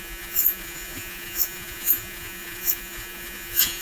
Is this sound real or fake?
fake